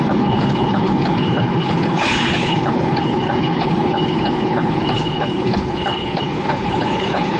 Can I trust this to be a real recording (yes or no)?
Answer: no